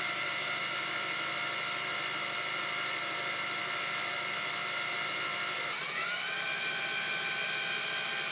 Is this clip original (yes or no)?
yes